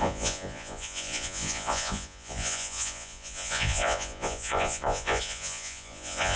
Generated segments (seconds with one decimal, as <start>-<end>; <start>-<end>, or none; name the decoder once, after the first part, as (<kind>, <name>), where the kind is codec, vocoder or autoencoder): 0.0-6.4 (vocoder, Vocos)